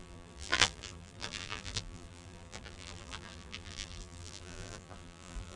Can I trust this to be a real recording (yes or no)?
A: no